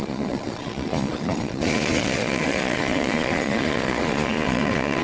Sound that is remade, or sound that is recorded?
remade